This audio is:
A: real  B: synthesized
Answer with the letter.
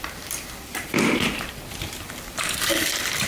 B